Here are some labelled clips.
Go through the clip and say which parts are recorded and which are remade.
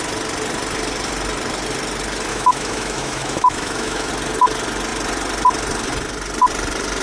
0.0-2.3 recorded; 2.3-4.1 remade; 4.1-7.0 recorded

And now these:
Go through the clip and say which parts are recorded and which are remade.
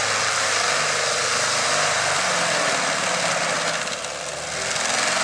0.0-5.2 recorded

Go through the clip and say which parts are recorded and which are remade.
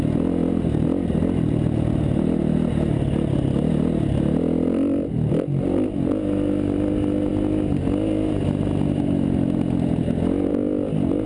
0.0-11.3 recorded